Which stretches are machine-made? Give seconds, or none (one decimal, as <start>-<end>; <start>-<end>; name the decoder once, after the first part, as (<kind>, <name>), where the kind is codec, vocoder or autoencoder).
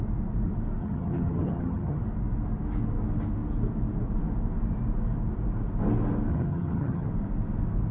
0.8-2.0 (vocoder, HiFi-GAN); 6.3-7.1